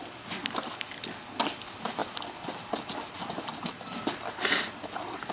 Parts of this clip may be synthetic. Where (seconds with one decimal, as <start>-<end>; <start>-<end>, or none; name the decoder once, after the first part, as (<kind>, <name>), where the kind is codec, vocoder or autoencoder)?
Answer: none